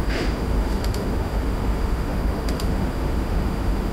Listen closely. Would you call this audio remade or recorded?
remade